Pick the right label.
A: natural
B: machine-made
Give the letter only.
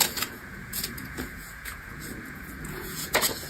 B